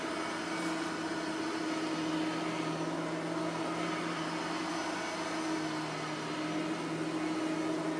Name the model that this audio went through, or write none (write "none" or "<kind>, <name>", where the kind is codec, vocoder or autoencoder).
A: none